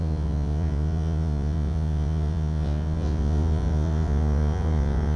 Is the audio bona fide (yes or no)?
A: no